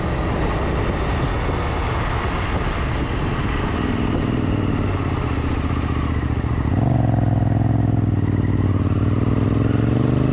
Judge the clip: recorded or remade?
recorded